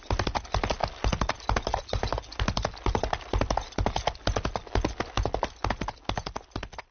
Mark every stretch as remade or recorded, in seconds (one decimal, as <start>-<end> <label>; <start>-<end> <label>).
0.0-6.9 recorded